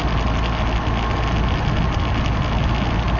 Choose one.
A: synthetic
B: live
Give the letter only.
B